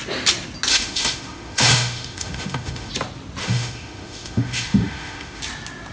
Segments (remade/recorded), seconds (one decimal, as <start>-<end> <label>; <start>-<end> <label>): 0.0-0.7 recorded; 0.7-2.9 remade; 2.9-3.4 recorded; 3.4-5.4 remade; 5.4-5.9 recorded